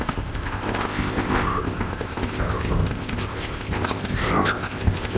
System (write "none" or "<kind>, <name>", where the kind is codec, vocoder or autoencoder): codec, ZipCodec